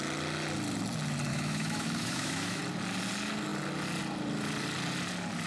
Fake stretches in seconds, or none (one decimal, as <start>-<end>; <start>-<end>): 1.3-2.6

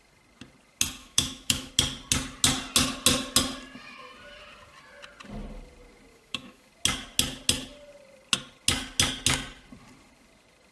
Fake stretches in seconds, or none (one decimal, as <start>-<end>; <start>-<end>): 1.0-1.7; 6.1-6.7

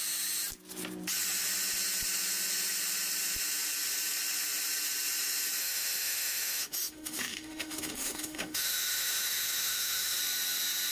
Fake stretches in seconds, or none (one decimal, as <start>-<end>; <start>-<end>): 5.6-10.2

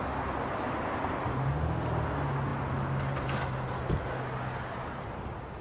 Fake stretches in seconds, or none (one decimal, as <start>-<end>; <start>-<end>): none